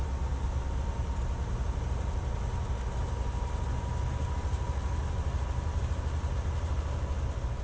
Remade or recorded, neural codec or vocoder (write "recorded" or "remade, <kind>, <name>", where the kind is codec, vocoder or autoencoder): recorded